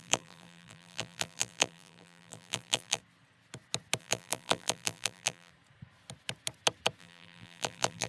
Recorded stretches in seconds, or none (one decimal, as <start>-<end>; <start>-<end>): 3.0-4.0; 5.5-7.0